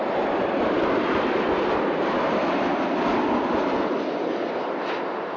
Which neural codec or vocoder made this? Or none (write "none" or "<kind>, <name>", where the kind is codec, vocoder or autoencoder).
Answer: none